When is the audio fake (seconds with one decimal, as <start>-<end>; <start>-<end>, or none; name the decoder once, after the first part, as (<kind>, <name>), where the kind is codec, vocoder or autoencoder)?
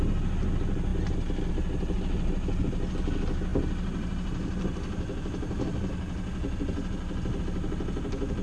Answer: none